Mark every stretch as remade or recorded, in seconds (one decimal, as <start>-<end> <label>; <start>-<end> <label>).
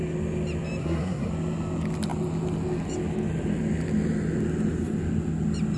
0.0-0.8 recorded; 0.8-1.3 remade; 1.3-5.8 recorded